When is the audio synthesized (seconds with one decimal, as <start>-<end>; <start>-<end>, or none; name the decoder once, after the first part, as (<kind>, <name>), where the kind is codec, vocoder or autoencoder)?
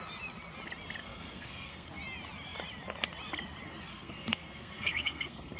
1.0-1.9 (codec, SNAC); 3.9-5.6